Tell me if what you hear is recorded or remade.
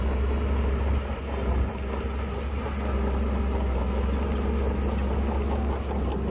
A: recorded